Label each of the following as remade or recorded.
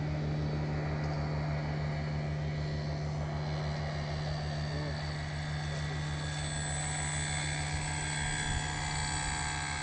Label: recorded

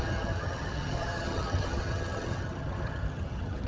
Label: remade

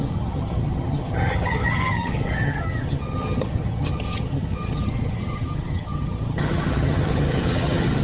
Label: remade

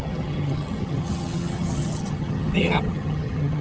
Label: remade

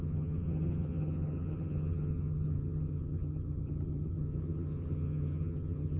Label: remade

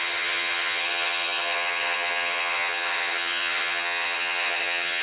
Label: remade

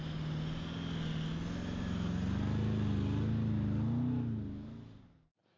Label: recorded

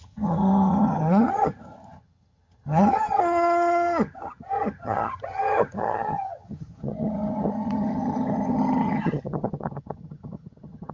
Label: remade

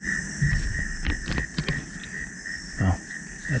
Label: recorded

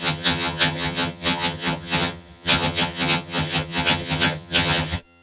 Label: remade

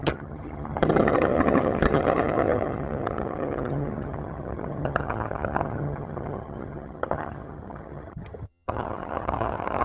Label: remade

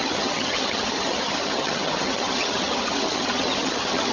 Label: remade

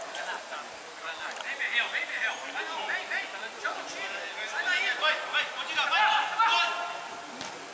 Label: recorded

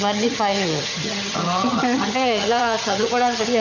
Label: remade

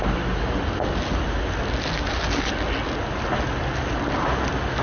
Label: recorded